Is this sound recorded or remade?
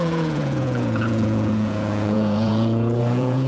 remade